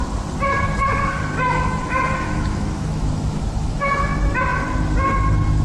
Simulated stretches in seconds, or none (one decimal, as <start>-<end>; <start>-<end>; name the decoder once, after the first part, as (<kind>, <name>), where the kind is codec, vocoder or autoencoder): 1.0-4.4 (autoencoder, DAC-VAE)